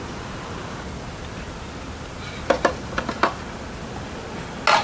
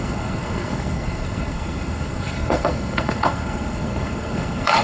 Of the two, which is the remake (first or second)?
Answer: second